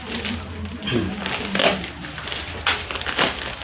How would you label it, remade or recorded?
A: recorded